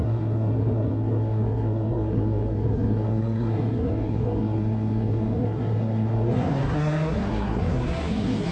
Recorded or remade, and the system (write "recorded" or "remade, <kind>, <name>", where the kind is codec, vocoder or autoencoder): remade, codec, SNAC